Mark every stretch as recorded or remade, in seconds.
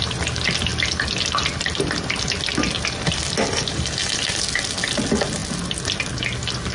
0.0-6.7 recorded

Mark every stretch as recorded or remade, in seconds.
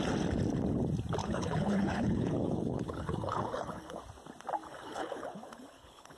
0.0-1.2 recorded; 1.2-4.0 remade; 4.0-4.6 recorded; 4.6-6.2 remade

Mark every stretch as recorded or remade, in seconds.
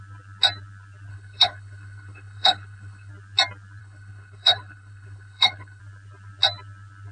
0.0-1.1 recorded; 1.1-3.1 remade; 3.1-3.8 recorded; 3.8-5.8 remade; 5.8-7.1 recorded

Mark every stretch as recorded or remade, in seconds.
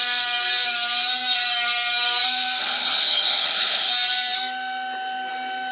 0.0-2.6 recorded; 2.6-3.9 remade; 3.9-5.7 recorded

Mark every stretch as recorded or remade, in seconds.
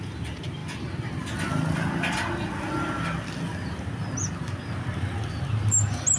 0.0-6.2 recorded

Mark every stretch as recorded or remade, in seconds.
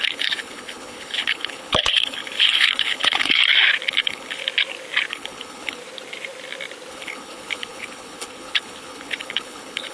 0.0-3.4 remade; 3.4-3.9 recorded; 3.9-4.4 remade; 4.4-5.1 recorded; 5.1-5.8 remade; 5.8-6.9 recorded; 6.9-9.9 remade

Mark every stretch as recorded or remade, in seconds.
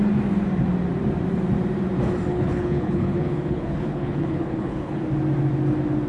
0.0-2.3 recorded; 2.3-5.0 remade; 5.0-6.1 recorded